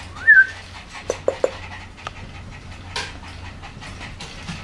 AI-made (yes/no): no